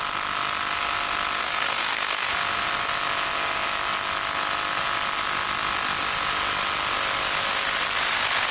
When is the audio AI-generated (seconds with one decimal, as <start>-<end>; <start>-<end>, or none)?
1.4-2.3